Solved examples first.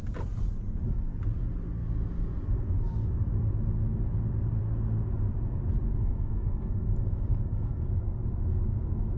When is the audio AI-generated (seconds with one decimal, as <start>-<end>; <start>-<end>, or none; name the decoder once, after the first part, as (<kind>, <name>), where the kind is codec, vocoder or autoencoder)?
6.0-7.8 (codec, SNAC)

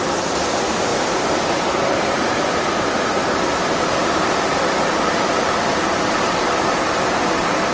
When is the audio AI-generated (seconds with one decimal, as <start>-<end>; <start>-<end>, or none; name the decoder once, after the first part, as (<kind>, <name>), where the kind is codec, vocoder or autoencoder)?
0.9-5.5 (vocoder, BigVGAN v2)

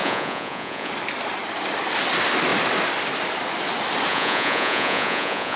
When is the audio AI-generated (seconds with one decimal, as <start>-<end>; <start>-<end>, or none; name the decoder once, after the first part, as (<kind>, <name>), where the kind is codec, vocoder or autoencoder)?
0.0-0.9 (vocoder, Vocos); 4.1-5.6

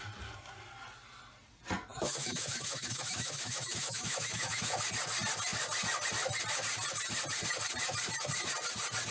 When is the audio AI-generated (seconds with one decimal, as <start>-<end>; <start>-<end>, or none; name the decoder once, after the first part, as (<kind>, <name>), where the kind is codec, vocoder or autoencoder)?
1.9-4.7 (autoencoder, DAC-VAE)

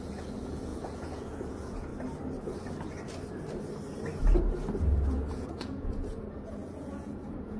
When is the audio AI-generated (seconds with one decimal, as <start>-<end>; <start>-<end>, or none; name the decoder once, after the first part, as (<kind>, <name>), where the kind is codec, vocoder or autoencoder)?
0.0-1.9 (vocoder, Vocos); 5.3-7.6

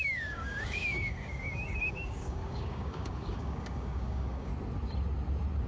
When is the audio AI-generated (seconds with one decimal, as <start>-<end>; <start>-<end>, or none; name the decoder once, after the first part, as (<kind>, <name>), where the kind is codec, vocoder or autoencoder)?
0.0-4.5 (codec, DAC)

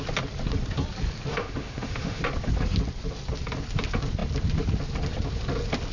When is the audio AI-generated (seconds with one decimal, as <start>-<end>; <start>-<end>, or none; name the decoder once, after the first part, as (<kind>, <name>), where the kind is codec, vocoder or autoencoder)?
1.3-2.2 (autoencoder, DAC-VAE)

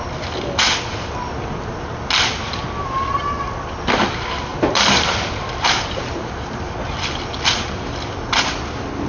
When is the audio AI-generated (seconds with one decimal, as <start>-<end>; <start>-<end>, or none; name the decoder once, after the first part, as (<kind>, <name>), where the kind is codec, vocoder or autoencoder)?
4.5-6.7 (vocoder, BigVGAN v2)